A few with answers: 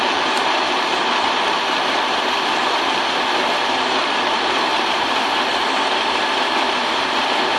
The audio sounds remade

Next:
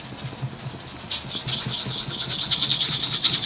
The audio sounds recorded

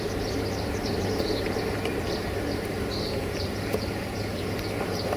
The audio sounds remade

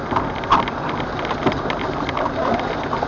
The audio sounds recorded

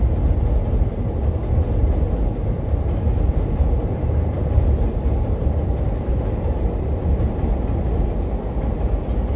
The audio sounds remade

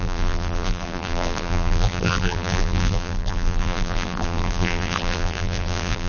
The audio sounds remade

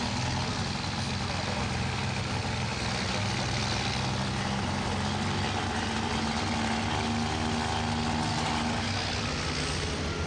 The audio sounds recorded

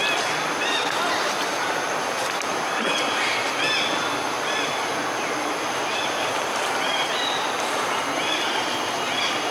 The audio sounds recorded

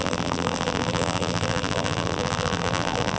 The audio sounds remade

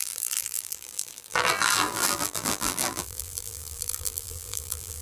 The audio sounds remade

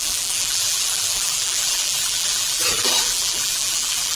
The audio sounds remade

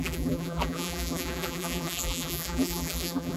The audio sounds remade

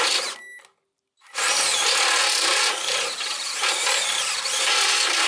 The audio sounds recorded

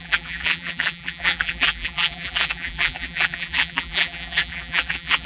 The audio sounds remade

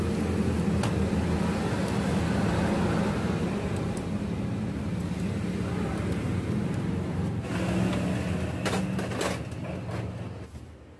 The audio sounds recorded